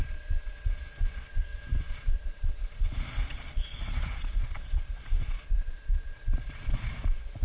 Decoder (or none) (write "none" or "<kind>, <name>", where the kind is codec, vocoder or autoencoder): vocoder, Vocos